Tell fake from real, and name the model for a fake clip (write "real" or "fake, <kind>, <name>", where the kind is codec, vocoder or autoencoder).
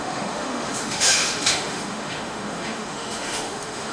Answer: fake, autoencoder, DAC-VAE